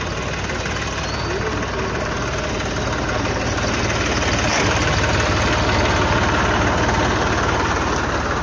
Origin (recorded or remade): recorded